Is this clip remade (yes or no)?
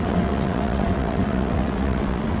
yes